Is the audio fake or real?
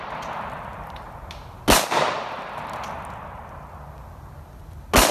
real